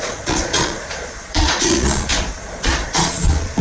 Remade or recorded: remade